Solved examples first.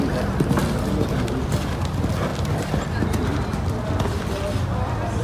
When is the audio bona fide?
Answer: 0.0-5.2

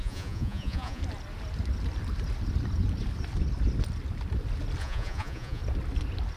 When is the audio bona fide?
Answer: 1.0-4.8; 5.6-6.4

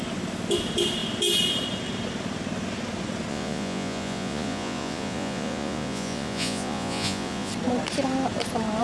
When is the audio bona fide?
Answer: 0.0-3.3; 7.5-8.8

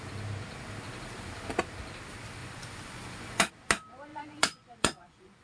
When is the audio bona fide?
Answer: 0.0-2.4; 3.5-4.1